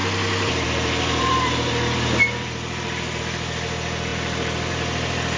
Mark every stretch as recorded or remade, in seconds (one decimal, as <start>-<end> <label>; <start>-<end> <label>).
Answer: 0.0-3.2 remade; 3.2-5.4 recorded